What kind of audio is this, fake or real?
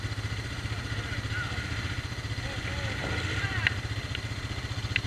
real